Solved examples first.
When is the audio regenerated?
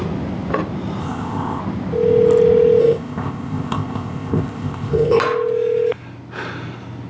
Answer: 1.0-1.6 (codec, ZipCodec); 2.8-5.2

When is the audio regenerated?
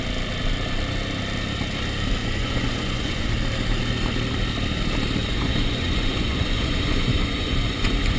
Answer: 2.2-3.3 (vocoder, Vocos); 5.2-8.2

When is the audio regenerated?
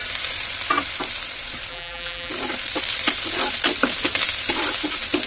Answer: 1.7-2.3 (vocoder, BigVGAN v2)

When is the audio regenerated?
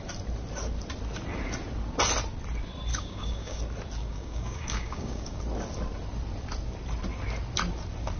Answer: 2.9-3.6 (codec, DAC); 4.0-5.4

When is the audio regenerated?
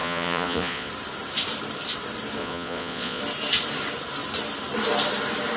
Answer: 0.0-0.9 (vocoder, Vocos); 2.4-3.2